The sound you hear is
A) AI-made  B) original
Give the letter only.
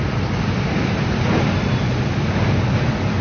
B